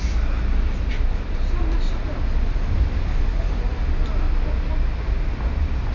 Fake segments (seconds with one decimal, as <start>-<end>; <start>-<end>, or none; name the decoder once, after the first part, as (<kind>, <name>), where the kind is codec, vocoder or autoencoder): 0.9-1.5 (vocoder, BigVGAN v2)